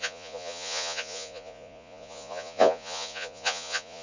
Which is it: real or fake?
fake